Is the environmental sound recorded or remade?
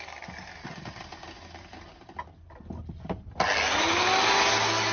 recorded